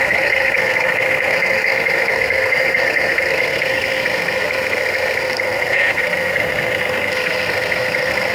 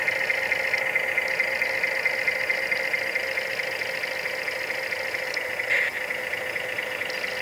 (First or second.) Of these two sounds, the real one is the second